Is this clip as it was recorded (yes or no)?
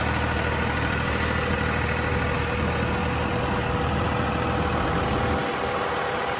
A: yes